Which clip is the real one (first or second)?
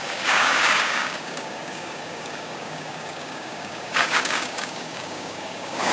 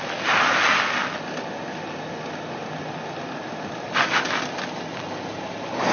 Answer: second